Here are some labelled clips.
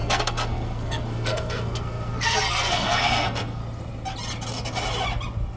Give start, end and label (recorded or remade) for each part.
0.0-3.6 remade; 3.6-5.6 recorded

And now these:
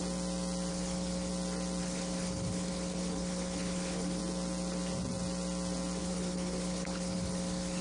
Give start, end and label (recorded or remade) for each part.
0.0-0.7 recorded; 0.7-1.3 remade; 1.3-1.8 recorded; 1.8-4.2 remade; 4.2-6.0 recorded; 6.0-7.8 remade

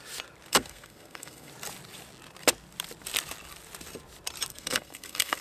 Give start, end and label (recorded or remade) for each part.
0.0-0.5 recorded; 0.5-1.5 remade; 1.5-4.5 recorded; 4.5-5.4 remade

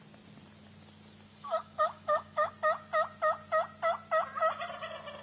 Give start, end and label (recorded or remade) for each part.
0.0-1.3 recorded; 1.3-2.5 remade; 2.5-5.2 recorded

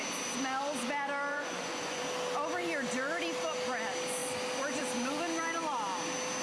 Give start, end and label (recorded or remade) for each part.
0.0-1.3 recorded; 1.3-2.0 remade; 2.0-6.4 recorded

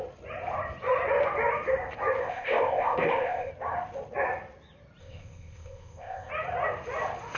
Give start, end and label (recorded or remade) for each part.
0.0-2.2 recorded; 2.2-3.5 remade; 3.5-5.0 recorded; 5.0-6.3 remade; 6.3-7.4 recorded

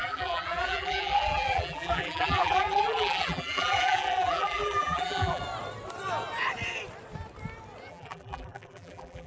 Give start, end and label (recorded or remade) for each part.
0.0-5.4 remade; 5.4-7.9 recorded; 7.9-9.3 remade

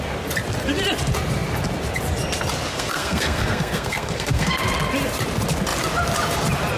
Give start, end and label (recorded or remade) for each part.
0.0-2.7 recorded; 2.7-4.6 remade; 4.6-6.8 recorded